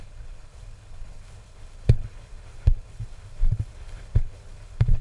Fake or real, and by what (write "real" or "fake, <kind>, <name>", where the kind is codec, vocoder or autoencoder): fake, codec, HILCodec